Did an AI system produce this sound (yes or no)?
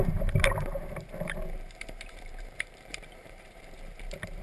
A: yes